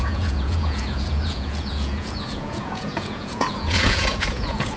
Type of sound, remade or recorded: remade